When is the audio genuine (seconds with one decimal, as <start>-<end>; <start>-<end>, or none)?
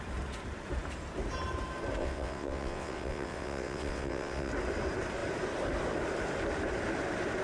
0.0-2.0; 4.5-7.4